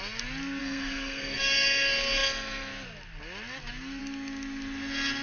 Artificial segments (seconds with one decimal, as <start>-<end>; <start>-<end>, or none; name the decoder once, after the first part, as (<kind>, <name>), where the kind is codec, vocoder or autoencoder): 0.6-1.4 (codec, SNAC)

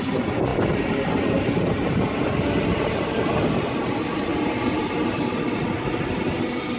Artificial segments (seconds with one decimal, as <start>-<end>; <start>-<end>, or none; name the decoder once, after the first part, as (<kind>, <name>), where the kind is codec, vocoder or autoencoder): none

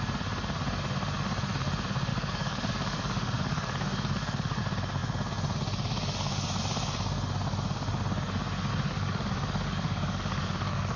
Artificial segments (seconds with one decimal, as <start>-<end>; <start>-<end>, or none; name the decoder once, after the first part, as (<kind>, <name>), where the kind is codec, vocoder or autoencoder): 2.1-4.6 (codec, DAC); 8.7-11.0

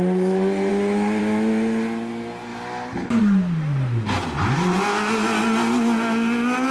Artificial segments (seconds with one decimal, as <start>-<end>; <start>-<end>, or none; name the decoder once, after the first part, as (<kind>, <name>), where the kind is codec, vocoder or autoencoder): none

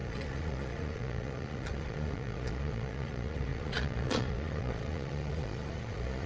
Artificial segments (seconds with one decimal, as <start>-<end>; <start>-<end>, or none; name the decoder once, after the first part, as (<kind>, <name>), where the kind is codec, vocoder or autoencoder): 0.0-6.3 (vocoder, Vocos)